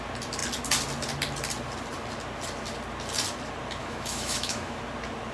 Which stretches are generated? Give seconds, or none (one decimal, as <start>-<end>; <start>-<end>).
3.8-4.8